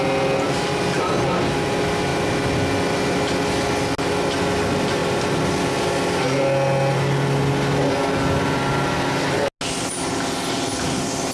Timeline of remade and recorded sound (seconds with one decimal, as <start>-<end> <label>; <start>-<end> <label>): 0.0-5.0 recorded; 5.0-5.7 remade; 5.7-11.3 recorded